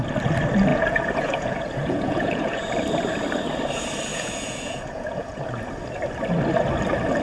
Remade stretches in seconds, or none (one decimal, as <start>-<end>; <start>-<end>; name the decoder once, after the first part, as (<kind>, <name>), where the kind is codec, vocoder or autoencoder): 0.7-2.7 (vocoder, Vocos); 4.1-5.4